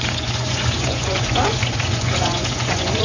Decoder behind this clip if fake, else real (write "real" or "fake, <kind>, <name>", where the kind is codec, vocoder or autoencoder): fake, vocoder, Vocos